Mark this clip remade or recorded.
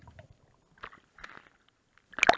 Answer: recorded